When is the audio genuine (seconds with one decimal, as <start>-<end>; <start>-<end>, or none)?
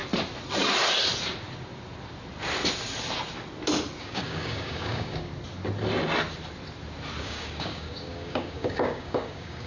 0.0-4.0; 5.3-7.2